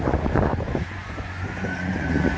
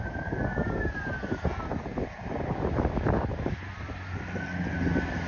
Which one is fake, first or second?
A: first